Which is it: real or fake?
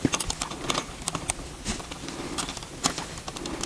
real